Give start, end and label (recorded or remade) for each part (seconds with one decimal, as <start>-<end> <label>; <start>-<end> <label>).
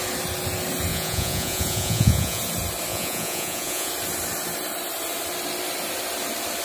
0.0-0.9 recorded; 0.9-2.4 remade; 2.4-2.9 recorded; 2.9-3.9 remade; 3.9-6.6 recorded